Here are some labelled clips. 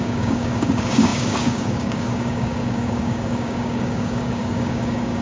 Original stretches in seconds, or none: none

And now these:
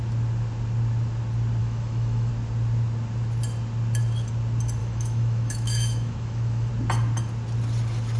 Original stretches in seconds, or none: 0.0-1.6; 2.3-4.8; 6.7-8.2

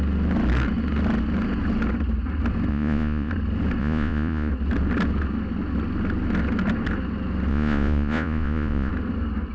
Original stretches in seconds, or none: 0.0-2.7; 3.3-3.8; 4.5-7.5; 8.9-9.5

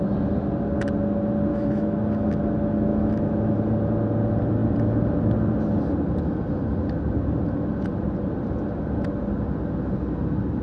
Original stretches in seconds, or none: 0.0-1.5; 2.4-2.9; 3.7-10.6

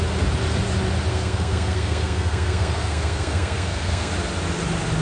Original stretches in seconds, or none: 0.0-1.1; 4.1-5.0

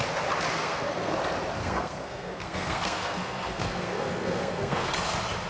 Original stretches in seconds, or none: 0.0-0.6; 1.1-1.6; 4.9-5.5